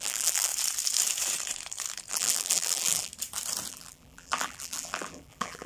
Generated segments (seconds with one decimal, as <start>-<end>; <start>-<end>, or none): 0.0-0.5; 2.1-3.1; 3.7-5.7